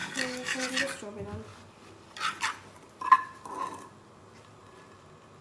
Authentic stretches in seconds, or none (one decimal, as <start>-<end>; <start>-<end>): 0.7-5.4